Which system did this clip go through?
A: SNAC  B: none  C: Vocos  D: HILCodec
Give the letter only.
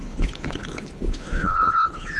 D